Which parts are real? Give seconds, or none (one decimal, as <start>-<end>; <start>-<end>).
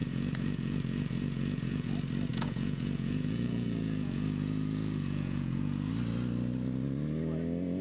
1.9-2.3; 5.9-7.8